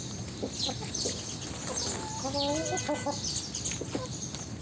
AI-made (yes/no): no